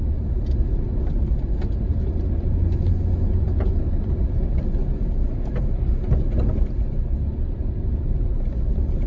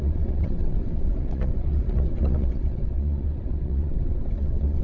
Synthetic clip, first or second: second